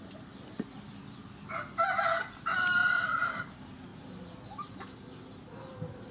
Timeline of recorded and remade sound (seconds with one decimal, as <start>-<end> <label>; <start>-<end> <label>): 0.0-2.8 recorded; 2.8-3.5 remade; 3.5-6.1 recorded